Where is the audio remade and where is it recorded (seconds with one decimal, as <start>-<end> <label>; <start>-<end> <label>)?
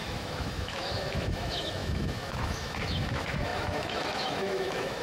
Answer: 0.0-5.0 remade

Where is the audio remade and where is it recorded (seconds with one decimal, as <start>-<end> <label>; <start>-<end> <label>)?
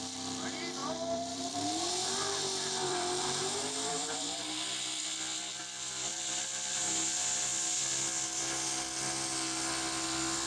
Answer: 0.0-0.8 recorded; 0.8-5.6 remade; 5.6-6.1 recorded; 6.1-6.8 remade; 6.8-10.5 recorded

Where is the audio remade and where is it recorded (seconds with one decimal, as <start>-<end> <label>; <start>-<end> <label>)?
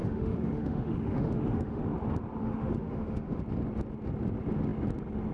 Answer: 0.0-1.8 remade; 1.8-2.4 recorded; 2.4-3.4 remade; 3.4-5.3 recorded